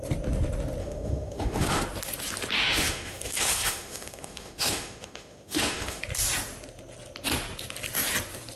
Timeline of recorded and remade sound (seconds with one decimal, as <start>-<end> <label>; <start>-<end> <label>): 0.0-0.8 recorded; 0.8-1.8 remade; 1.8-2.6 recorded; 2.6-6.0 remade; 6.0-8.6 recorded